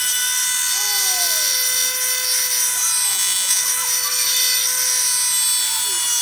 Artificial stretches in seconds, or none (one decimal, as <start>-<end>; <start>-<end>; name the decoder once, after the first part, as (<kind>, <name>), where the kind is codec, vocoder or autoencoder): 3.1-3.6 (vocoder, Vocos)